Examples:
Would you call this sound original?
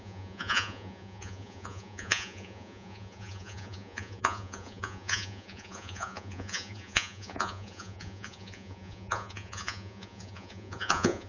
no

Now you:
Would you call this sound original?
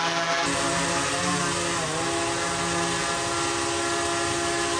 yes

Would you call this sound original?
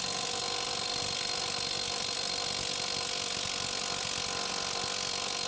yes